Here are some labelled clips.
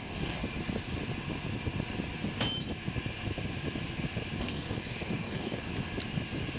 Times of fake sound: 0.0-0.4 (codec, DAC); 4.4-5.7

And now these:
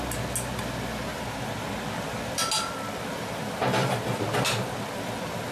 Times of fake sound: none

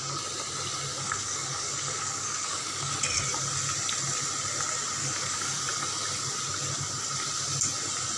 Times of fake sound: 0.9-2.9 (codec, DAC); 5.0-5.6